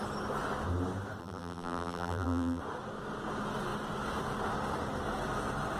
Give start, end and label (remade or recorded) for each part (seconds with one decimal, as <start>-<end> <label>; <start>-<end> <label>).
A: 0.0-1.2 recorded; 1.2-2.6 remade; 2.6-5.8 recorded